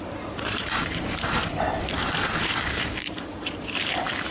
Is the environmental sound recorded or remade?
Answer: remade